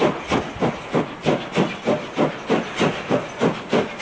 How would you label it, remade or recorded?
recorded